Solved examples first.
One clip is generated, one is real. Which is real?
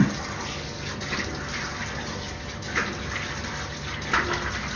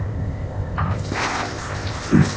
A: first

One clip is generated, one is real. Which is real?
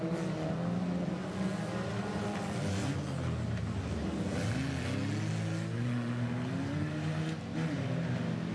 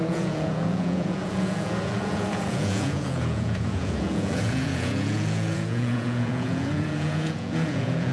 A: first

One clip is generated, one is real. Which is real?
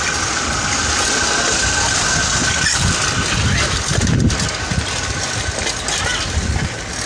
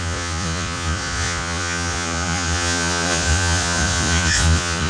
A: first